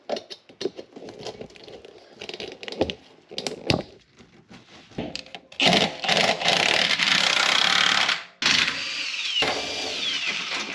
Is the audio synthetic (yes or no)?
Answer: no